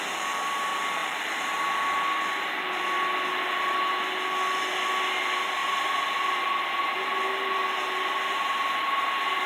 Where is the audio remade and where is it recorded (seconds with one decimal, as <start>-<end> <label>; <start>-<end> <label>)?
0.0-9.5 recorded